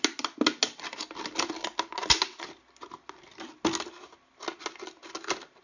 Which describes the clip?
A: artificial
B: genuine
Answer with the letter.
B